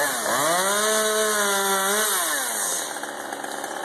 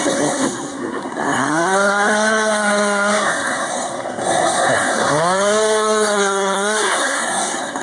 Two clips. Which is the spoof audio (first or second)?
second